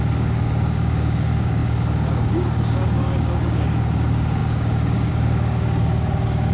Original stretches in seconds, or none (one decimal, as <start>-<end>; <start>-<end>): none